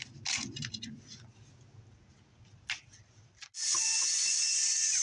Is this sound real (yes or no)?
yes